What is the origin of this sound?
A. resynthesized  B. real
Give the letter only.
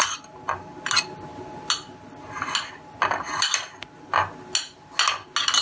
B